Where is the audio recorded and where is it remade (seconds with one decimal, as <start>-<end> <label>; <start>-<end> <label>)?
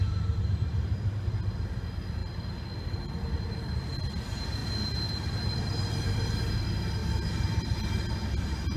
0.0-8.8 recorded